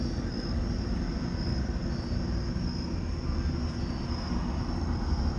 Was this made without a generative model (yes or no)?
yes